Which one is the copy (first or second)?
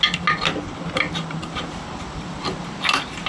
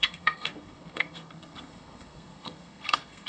second